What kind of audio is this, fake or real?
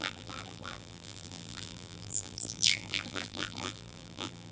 fake